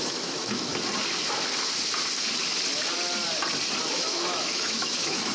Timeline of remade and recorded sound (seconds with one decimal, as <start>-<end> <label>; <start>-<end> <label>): 0.0-0.7 remade; 0.7-3.9 recorded; 3.9-5.3 remade